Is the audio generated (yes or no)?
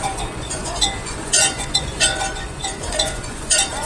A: yes